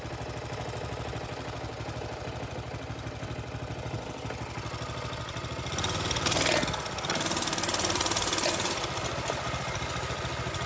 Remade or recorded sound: recorded